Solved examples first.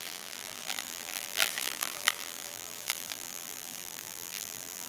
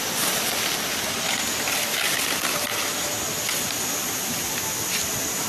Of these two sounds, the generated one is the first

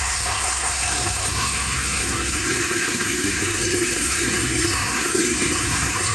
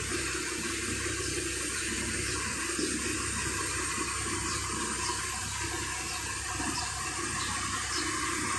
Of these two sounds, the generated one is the first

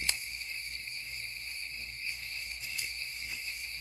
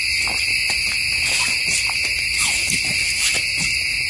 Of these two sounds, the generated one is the first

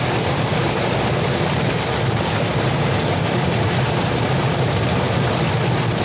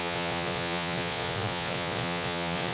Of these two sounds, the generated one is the second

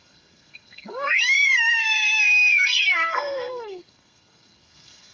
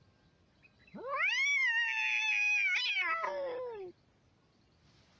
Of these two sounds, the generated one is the first